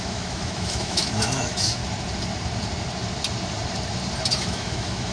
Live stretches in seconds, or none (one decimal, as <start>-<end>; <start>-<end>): 1.8-4.3